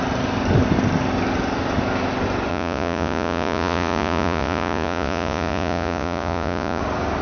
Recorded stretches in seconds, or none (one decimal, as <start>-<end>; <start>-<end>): 0.0-2.5; 6.8-7.2